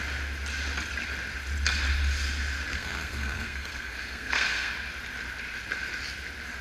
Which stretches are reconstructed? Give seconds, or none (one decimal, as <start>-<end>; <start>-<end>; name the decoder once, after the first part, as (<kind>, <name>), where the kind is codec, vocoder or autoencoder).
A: 2.7-4.7 (codec, SNAC)